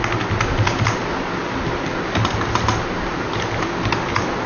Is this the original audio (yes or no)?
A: yes